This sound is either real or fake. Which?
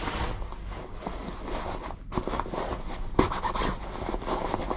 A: real